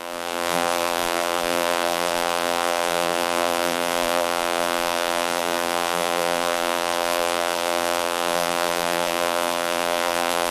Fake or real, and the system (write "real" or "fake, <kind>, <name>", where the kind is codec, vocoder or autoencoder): fake, vocoder, BigVGAN v2